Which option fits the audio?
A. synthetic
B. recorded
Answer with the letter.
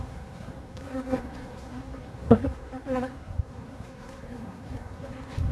A